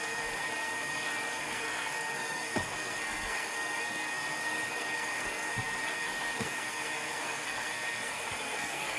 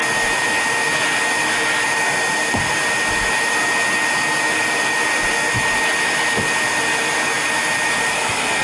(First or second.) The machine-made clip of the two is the first